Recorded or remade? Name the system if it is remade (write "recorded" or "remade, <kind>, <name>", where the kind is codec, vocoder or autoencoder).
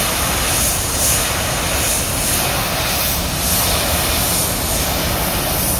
recorded